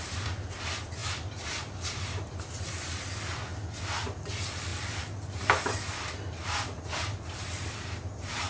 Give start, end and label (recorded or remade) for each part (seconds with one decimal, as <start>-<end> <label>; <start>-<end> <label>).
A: 0.0-3.5 remade; 3.5-4.2 recorded; 4.2-8.5 remade